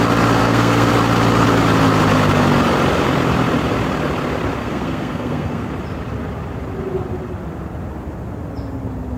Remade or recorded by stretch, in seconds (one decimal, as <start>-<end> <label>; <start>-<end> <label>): 0.0-0.4 recorded; 0.4-0.9 remade; 0.9-4.6 recorded; 4.6-5.7 remade; 5.7-9.2 recorded